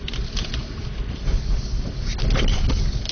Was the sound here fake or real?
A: real